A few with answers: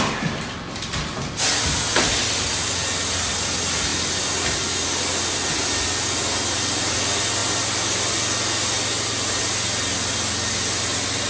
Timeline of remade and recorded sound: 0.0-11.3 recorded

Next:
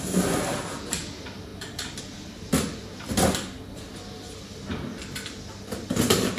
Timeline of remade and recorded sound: 0.0-6.4 recorded

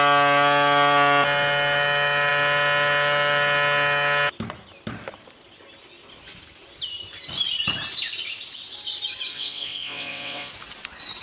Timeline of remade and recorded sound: 0.0-9.3 recorded; 9.3-10.5 remade; 10.5-11.2 recorded

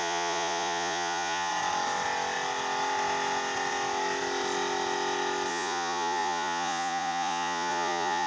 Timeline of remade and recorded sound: 0.0-1.5 remade; 1.5-5.5 recorded; 5.5-8.3 remade

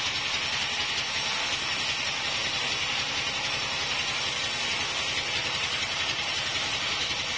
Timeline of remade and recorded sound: 0.0-5.4 recorded; 5.4-6.4 remade; 6.4-7.4 recorded

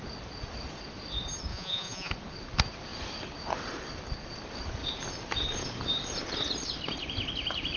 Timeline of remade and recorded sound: 0.0-1.5 recorded; 1.5-2.1 remade; 2.1-7.8 recorded